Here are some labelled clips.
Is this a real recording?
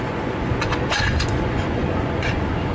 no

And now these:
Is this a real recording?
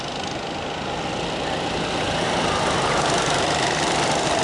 yes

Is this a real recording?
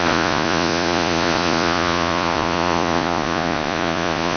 no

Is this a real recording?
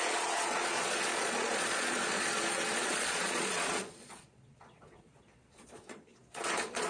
no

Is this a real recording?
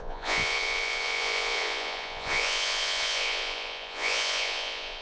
no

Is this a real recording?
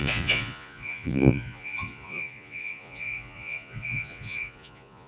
no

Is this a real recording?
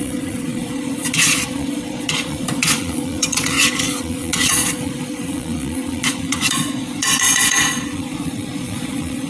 no